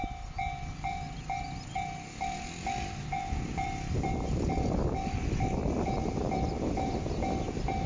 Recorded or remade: remade